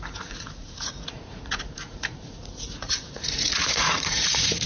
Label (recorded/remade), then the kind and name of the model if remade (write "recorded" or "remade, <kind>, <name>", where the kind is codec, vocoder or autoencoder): remade, vocoder, Vocos